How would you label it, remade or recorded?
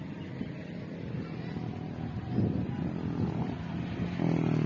recorded